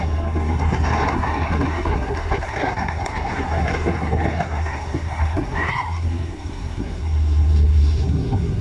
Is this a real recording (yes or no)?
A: no